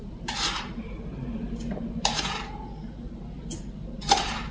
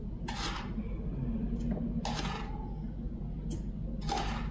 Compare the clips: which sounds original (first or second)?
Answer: second